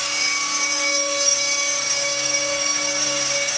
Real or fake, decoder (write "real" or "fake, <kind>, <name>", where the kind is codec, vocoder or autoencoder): fake, codec, DAC